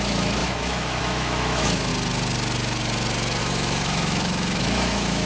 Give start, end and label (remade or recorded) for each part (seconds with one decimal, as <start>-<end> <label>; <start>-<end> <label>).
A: 0.0-1.9 remade; 1.9-3.4 recorded; 3.4-5.2 remade